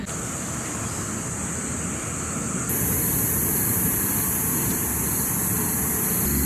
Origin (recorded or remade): recorded